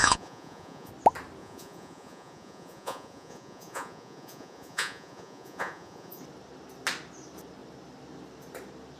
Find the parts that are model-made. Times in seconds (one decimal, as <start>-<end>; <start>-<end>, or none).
0.0-0.9; 1.4-6.2